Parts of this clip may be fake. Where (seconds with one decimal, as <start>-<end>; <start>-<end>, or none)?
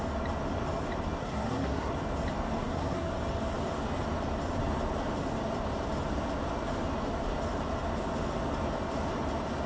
1.2-1.9; 2.6-3.1